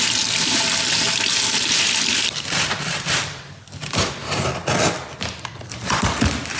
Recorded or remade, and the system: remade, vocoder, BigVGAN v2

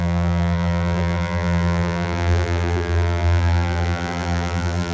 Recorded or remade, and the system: remade, vocoder, BigVGAN v2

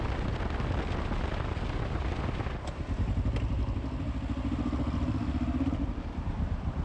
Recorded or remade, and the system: recorded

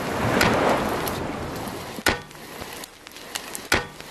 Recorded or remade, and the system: recorded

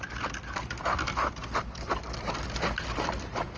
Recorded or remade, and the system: recorded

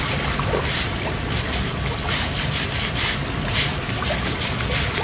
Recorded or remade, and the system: remade, vocoder, BigVGAN v2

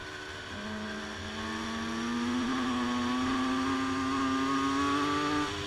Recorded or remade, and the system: recorded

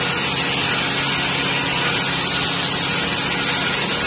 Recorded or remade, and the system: recorded